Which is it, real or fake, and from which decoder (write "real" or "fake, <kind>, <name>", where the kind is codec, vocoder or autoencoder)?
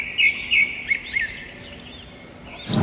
real